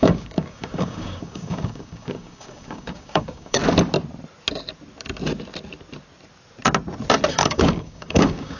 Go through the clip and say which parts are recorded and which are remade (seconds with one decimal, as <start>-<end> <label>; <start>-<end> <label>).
0.0-3.6 remade; 3.6-7.3 recorded; 7.3-8.6 remade